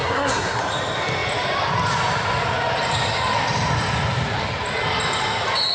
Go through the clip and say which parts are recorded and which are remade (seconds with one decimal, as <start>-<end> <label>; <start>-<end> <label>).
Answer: 0.0-0.6 remade; 0.6-5.7 recorded